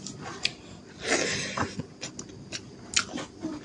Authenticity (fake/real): real